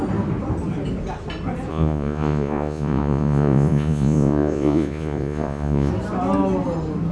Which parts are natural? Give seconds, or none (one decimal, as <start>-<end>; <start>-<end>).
0.0-1.7; 5.9-7.1